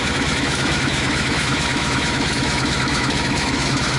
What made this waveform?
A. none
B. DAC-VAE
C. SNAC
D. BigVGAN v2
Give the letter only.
B